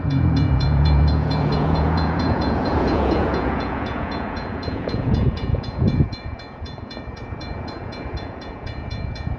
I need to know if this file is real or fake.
fake